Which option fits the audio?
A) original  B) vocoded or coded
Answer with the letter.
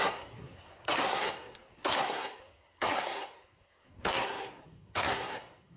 B